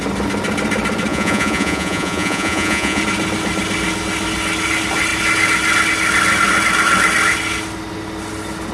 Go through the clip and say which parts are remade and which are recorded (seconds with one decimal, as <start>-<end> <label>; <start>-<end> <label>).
0.0-1.1 recorded; 1.1-3.0 remade; 3.0-8.7 recorded